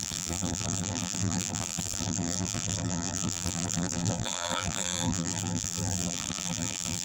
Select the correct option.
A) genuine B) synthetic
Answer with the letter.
B